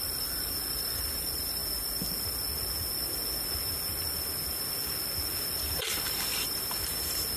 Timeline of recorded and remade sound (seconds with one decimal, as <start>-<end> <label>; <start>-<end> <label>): 0.0-1.6 remade; 1.6-5.5 recorded; 5.5-7.4 remade